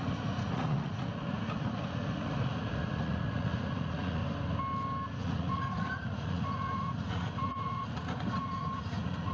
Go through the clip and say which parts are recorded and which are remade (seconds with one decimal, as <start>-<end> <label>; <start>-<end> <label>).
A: 0.0-4.2 remade; 4.2-5.2 recorded; 5.2-9.3 remade